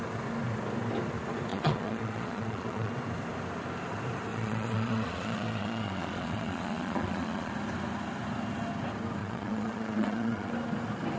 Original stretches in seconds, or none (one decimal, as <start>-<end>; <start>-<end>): 0.0-1.5; 2.9-4.3; 7.5-9.2; 10.5-11.2